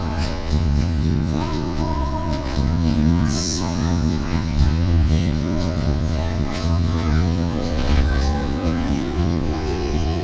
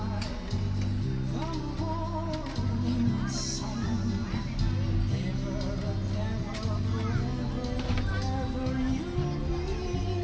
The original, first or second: second